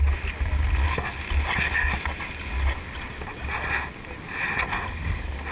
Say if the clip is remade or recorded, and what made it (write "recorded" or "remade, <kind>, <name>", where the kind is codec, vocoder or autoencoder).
recorded